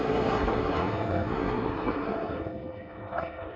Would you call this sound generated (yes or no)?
yes